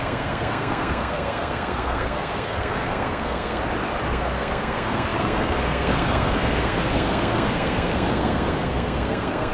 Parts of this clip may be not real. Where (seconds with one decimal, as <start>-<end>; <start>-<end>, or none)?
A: 0.0-3.6; 4.1-9.5